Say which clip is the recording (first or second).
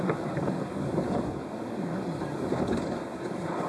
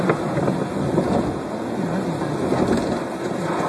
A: second